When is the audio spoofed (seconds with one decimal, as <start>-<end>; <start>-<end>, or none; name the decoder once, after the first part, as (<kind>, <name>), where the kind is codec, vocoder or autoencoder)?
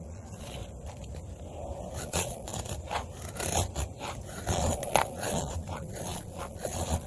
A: 0.0-0.6 (vocoder, Vocos); 2.0-2.5; 4.5-7.1